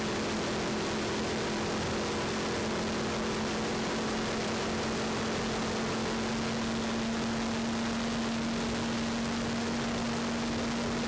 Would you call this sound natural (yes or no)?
yes